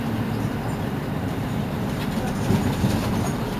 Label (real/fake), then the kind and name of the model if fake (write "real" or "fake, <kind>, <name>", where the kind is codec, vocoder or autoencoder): fake, vocoder, BigVGAN v2